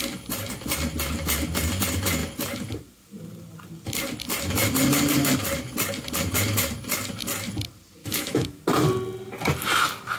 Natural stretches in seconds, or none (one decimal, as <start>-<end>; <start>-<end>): 0.0-8.0; 8.6-10.2